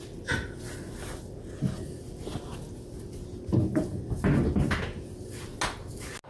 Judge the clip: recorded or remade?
recorded